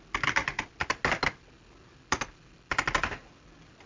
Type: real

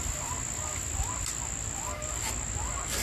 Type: real